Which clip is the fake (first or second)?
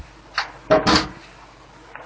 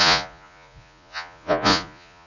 second